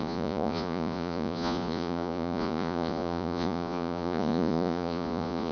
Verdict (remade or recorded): remade